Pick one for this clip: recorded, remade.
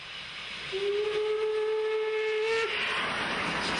recorded